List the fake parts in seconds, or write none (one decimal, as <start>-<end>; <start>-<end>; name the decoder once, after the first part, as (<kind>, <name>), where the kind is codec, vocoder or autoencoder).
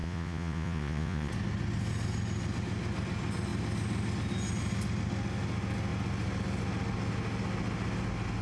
0.0-1.3 (vocoder, Vocos)